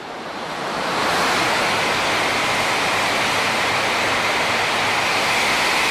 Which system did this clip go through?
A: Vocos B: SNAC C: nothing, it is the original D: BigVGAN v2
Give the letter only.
C